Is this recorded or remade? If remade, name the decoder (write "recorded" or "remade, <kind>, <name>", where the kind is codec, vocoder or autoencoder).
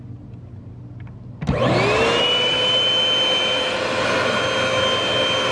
recorded